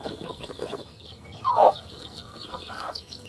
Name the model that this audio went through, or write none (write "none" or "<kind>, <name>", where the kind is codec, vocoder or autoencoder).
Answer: codec, SNAC